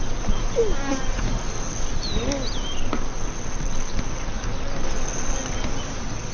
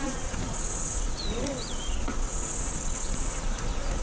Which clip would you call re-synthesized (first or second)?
second